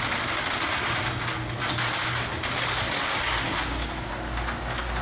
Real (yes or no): yes